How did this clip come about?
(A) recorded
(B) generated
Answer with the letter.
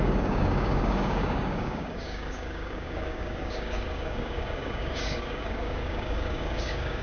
B